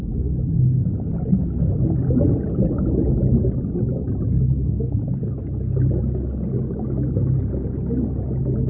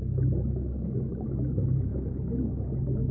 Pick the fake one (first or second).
second